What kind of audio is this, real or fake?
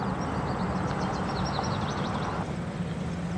real